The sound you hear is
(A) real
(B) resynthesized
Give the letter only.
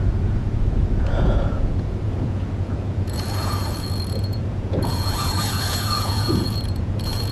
B